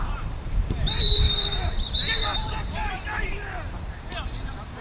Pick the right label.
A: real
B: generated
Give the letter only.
B